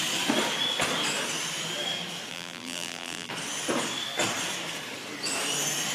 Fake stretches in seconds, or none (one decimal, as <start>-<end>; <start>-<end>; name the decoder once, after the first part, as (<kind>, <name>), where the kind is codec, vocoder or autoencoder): 2.3-3.3 (vocoder, BigVGAN v2)